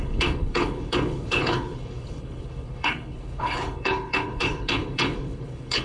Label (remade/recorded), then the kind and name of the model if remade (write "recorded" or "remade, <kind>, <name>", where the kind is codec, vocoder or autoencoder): remade, codec, HILCodec